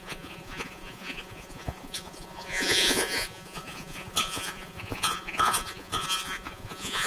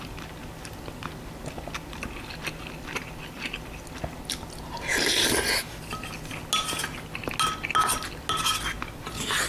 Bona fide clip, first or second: second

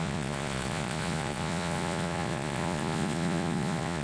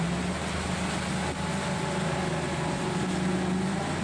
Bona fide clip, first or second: second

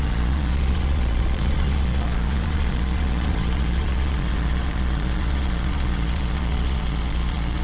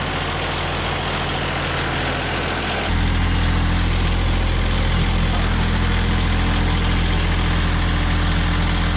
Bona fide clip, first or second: second